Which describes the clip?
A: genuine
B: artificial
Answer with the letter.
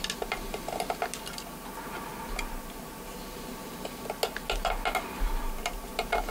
A